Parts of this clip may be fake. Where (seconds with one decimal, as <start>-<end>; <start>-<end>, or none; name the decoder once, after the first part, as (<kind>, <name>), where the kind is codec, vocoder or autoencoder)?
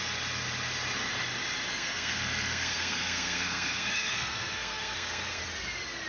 1.7-5.4 (codec, SNAC)